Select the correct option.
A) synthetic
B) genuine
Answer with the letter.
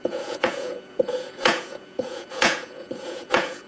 A